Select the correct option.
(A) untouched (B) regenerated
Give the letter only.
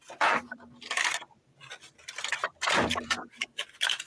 B